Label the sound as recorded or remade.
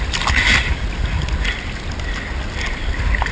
recorded